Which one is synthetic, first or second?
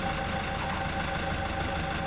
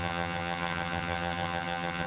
second